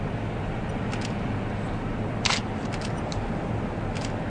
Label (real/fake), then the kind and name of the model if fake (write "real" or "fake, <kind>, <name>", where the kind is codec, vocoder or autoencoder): real